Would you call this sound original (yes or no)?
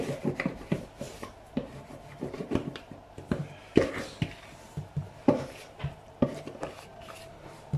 no